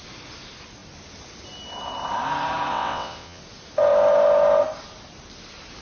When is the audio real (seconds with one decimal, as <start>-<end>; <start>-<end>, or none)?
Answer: 0.0-2.7; 3.4-5.8